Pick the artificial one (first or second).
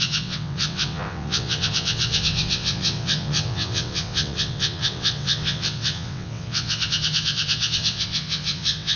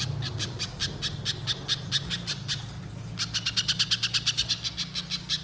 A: first